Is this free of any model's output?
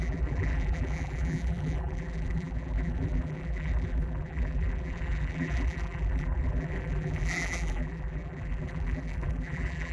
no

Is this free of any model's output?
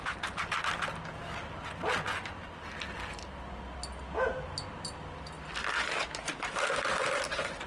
yes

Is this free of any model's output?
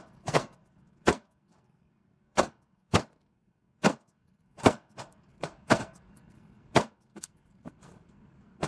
no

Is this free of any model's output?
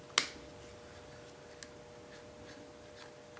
yes